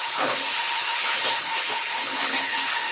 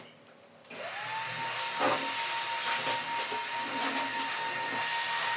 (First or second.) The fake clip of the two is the first